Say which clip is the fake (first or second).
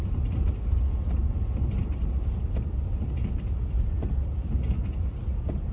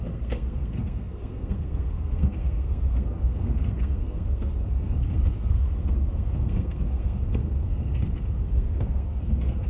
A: second